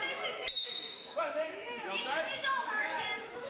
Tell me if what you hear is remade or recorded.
remade